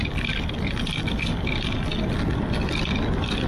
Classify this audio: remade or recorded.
recorded